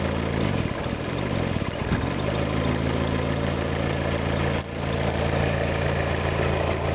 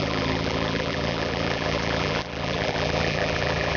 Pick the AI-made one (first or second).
second